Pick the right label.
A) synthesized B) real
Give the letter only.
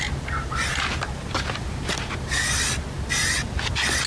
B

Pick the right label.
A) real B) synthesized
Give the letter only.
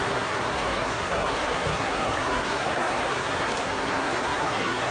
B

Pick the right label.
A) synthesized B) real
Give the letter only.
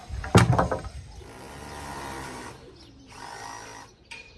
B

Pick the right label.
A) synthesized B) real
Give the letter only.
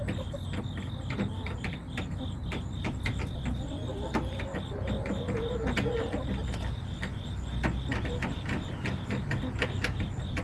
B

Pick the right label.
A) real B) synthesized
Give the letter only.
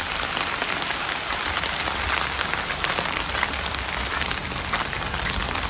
B